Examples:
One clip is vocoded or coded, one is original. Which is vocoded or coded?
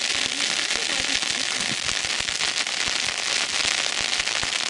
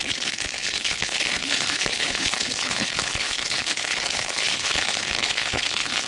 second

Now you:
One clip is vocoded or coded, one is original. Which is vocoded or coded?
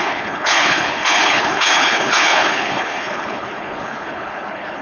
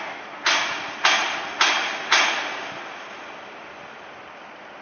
first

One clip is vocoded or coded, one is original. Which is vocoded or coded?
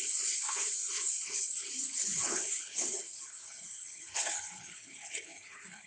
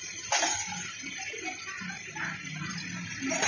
first